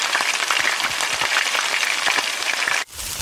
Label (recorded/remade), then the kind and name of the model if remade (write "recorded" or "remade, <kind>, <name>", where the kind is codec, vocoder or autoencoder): recorded